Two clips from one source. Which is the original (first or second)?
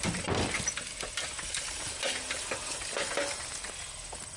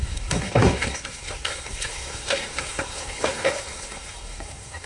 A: first